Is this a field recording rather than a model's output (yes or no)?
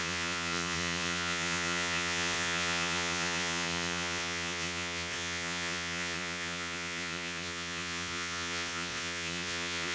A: no